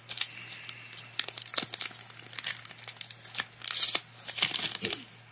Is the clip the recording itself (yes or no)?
yes